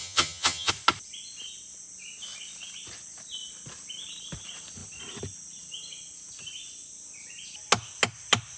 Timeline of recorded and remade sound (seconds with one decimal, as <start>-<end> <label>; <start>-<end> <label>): 0.0-0.7 remade; 0.7-8.6 recorded